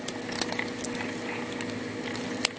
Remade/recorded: recorded